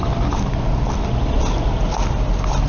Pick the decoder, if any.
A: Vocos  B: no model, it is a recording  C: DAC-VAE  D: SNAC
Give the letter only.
B